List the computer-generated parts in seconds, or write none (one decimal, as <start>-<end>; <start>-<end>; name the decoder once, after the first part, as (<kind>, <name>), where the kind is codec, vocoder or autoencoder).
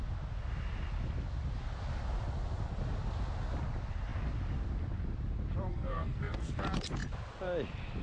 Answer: 5.7-6.5 (codec, SNAC)